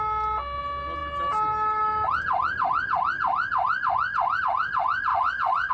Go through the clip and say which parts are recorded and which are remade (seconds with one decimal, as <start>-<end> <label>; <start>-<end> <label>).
0.0-5.1 recorded; 5.1-5.7 remade